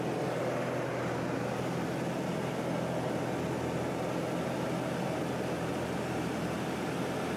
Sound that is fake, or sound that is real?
real